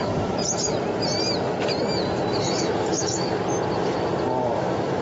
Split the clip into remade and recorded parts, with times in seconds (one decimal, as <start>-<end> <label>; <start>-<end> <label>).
0.0-0.4 remade; 0.4-2.3 recorded; 2.3-3.3 remade; 3.3-4.4 recorded; 4.4-5.0 remade